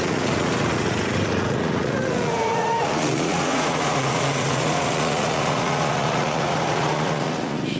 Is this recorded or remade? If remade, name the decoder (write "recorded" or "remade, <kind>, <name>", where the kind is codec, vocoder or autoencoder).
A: remade, vocoder, Vocos